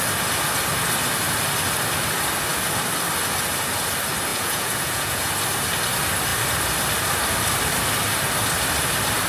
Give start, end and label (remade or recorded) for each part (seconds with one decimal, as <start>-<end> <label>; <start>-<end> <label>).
0.0-4.3 recorded; 4.3-5.3 remade; 5.3-9.3 recorded